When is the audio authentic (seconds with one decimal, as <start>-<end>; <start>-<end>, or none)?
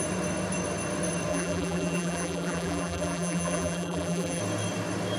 0.0-1.3; 4.4-5.2